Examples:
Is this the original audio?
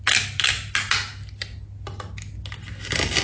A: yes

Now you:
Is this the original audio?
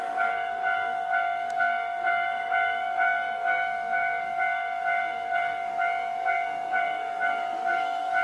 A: no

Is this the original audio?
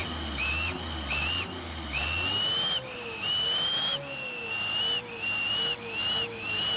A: yes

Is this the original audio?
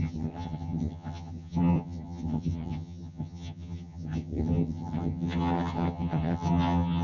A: no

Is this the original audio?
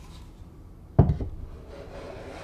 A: yes